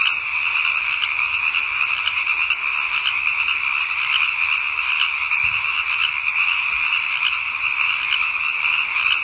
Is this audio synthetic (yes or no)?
no